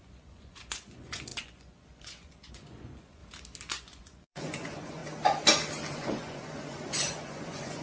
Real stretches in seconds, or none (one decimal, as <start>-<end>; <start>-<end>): 3.2-3.7; 5.0-5.9